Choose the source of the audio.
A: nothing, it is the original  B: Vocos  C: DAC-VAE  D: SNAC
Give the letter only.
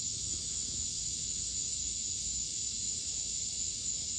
C